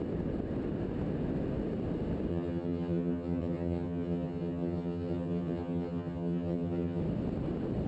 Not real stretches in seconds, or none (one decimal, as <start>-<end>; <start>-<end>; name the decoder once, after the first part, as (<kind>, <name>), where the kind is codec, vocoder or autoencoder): 2.3-7.0 (vocoder, HiFi-GAN)